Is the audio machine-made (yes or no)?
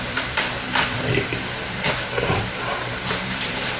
yes